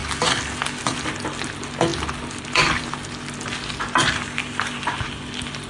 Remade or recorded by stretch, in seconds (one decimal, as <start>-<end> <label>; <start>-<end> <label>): 0.0-5.7 recorded